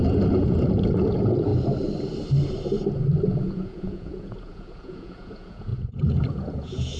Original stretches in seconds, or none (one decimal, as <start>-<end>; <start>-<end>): 1.5-3.2